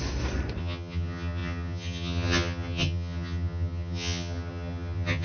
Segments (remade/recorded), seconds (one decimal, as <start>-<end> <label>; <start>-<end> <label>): 0.0-0.6 recorded; 0.6-5.2 remade